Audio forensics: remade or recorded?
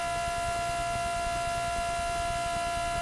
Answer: recorded